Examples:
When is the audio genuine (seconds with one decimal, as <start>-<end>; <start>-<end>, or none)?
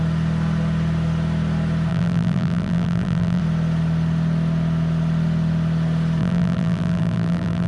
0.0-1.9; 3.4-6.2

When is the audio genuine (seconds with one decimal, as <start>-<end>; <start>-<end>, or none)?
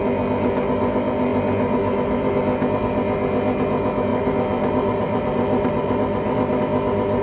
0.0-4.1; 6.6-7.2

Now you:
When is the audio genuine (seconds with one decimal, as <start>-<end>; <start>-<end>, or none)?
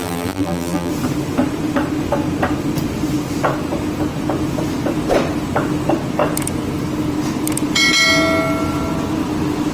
0.9-9.7